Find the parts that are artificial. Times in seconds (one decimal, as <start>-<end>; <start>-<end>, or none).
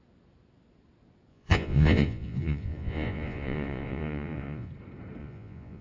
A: 1.3-4.7; 5.2-5.8